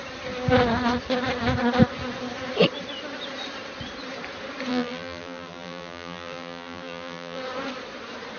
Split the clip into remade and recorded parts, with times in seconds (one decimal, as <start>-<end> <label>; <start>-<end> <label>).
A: 0.0-4.7 recorded; 4.7-7.4 remade; 7.4-8.4 recorded